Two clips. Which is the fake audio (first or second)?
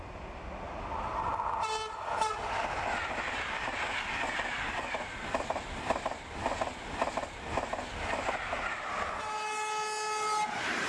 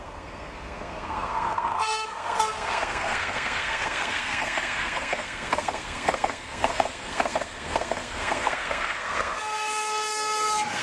second